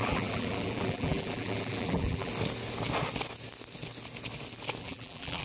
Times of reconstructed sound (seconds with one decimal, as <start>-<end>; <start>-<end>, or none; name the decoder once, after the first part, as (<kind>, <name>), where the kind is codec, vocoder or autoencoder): 0.0-2.3 (vocoder, BigVGAN v2); 4.8-5.4